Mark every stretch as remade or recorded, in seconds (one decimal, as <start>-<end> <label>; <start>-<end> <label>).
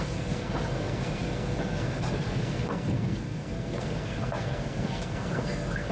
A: 0.0-5.9 remade